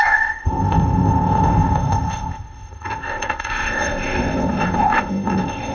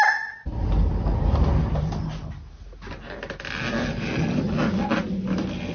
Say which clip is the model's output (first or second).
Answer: first